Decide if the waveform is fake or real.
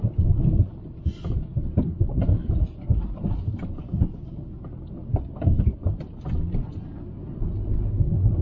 real